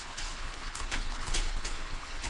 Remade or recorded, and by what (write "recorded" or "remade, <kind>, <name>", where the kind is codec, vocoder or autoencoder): remade, codec, HILCodec